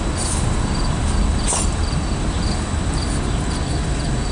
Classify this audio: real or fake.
real